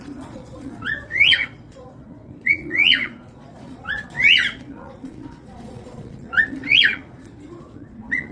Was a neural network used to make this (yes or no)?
yes